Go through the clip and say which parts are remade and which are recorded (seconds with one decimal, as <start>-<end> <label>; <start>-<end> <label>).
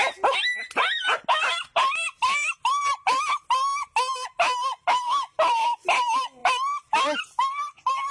0.0-8.1 recorded